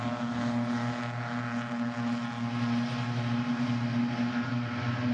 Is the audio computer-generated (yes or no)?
no